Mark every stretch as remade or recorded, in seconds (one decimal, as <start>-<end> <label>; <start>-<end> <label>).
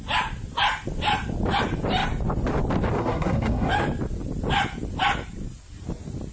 0.0-3.0 recorded; 3.0-3.7 remade; 3.7-6.3 recorded